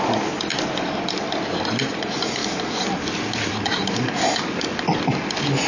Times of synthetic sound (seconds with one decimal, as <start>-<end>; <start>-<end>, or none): none